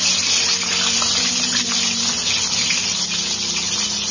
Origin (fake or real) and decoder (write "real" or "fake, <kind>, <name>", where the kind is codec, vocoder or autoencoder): real